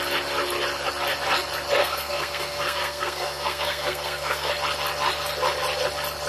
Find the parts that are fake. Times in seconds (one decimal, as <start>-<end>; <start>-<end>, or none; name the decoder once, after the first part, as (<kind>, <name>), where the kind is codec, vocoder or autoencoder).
1.8-4.5 (codec, SNAC)